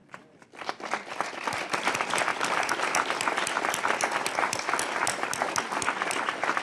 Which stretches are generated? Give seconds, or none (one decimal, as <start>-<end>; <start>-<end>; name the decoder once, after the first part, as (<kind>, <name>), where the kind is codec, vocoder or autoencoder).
0.0-0.7 (vocoder, BigVGAN v2); 2.3-5.4